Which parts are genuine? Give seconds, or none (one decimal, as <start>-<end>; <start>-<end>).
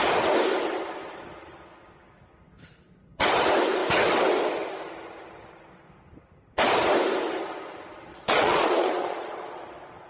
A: 0.0-8.1; 9.7-10.1